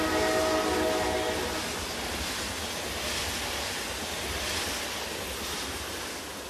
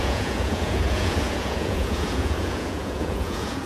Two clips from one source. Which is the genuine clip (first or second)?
first